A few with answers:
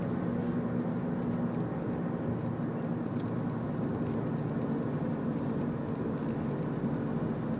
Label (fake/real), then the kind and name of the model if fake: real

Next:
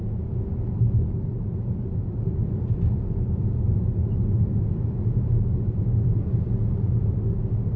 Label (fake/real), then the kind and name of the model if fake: real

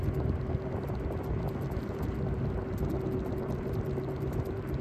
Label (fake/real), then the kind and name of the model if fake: real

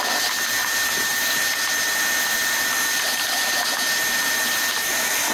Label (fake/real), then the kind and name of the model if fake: real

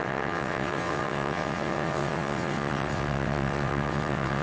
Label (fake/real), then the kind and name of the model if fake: fake, vocoder, WaveNeXt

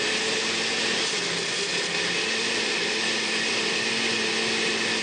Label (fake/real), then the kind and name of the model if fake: real